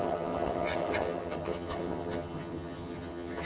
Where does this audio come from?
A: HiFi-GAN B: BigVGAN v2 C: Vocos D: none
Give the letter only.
A